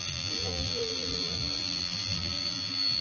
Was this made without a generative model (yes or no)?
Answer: no